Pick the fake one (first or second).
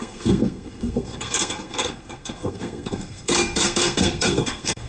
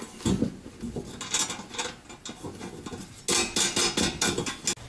first